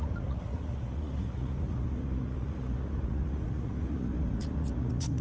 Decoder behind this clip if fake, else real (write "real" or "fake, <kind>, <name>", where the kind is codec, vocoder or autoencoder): fake, vocoder, Vocos